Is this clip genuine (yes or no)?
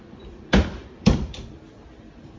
no